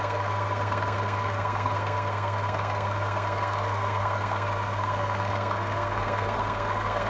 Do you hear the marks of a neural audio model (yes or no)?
yes